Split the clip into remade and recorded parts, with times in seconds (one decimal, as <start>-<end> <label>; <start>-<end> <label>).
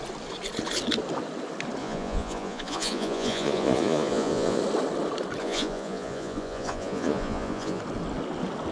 0.0-1.8 recorded; 1.8-4.6 remade; 4.6-5.4 recorded; 5.4-7.8 remade; 7.8-8.7 recorded